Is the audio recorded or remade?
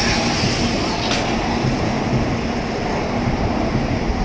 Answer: recorded